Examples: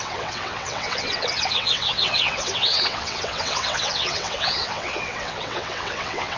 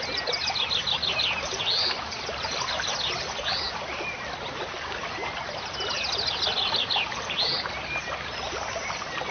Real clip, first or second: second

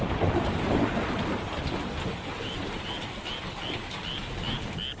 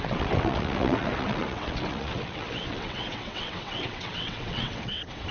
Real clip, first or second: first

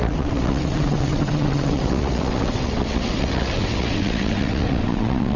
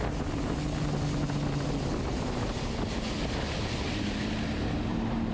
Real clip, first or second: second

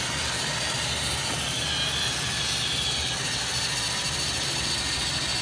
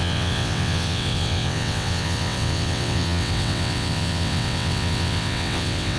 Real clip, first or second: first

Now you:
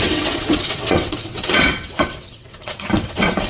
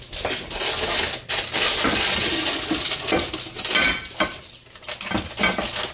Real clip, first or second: second